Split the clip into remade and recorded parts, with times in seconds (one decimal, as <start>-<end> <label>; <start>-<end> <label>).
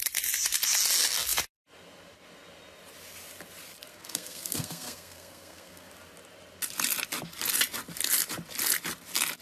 0.0-3.9 recorded; 3.9-5.9 remade; 5.9-9.4 recorded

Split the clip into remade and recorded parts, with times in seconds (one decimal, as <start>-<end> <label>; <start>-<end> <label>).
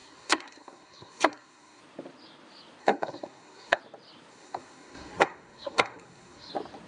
0.0-1.8 remade; 1.8-2.8 recorded; 2.8-3.8 remade; 3.8-4.3 recorded; 4.3-6.5 remade; 6.5-6.9 recorded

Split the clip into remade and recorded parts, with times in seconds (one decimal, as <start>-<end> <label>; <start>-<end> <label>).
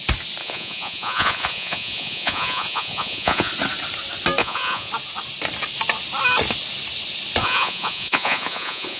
0.0-0.4 recorded; 0.4-3.5 remade; 3.5-4.4 recorded; 4.4-4.9 remade; 4.9-7.4 recorded; 7.4-9.0 remade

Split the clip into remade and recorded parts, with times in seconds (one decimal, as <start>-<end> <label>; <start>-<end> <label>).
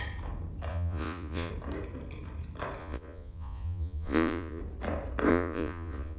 0.0-0.7 recorded; 0.7-1.5 remade; 1.5-2.8 recorded; 2.8-4.6 remade; 4.6-5.3 recorded; 5.3-6.2 remade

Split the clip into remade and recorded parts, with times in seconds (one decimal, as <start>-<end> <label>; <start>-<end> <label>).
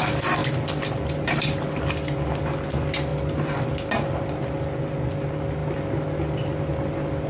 0.0-7.3 recorded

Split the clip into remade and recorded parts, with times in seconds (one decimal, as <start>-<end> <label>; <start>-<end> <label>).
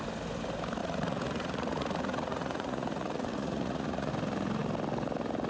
0.0-0.8 recorded; 0.8-4.1 remade; 4.1-5.5 recorded